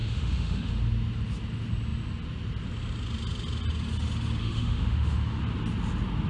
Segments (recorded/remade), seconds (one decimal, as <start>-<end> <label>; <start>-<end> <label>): 0.0-0.7 remade; 0.7-4.4 recorded; 4.4-5.4 remade; 5.4-6.3 recorded